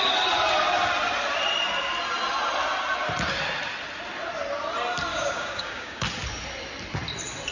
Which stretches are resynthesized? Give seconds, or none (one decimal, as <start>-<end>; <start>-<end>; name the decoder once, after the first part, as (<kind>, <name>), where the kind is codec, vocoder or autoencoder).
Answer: 5.1-6.0 (codec, DAC)